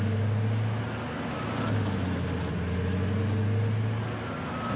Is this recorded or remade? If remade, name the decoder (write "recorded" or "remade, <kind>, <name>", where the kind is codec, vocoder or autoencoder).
recorded